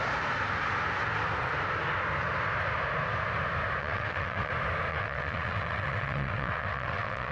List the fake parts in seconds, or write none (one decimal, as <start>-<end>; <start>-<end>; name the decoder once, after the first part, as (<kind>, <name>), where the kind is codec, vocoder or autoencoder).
3.8-4.5 (vocoder, WaveNeXt); 4.9-7.3